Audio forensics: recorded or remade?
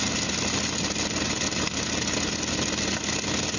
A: recorded